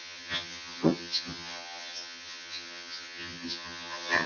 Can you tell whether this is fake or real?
fake